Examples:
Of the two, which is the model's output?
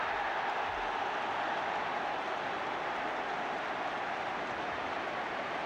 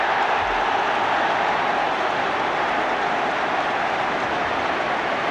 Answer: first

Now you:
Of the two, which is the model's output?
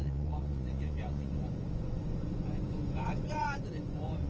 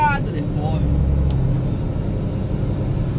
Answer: first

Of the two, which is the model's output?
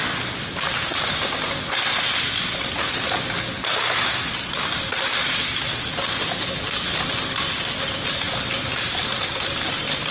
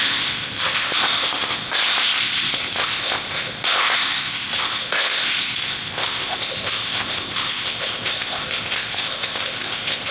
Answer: second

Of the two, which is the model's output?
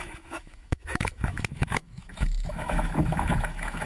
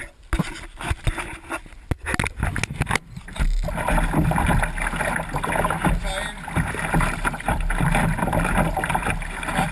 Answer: first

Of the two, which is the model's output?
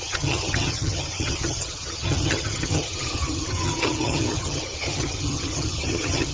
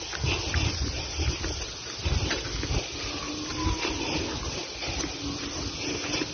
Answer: first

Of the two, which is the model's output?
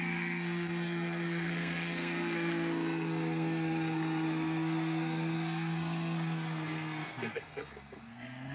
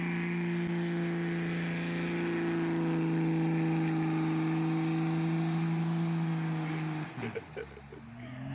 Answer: first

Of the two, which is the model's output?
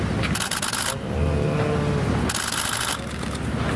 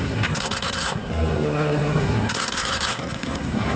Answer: second